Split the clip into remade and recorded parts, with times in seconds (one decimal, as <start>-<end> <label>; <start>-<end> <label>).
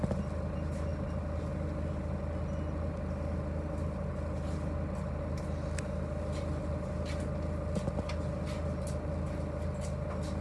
0.0-10.4 recorded